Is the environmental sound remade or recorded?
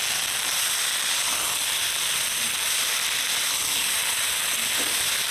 remade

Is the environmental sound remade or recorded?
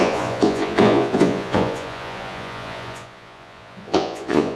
remade